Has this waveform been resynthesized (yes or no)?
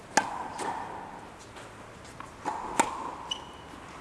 no